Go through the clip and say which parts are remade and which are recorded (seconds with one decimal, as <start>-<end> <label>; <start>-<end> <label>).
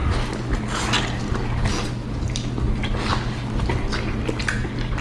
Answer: 0.0-5.0 recorded